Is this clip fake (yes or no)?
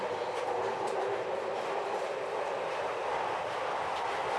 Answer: no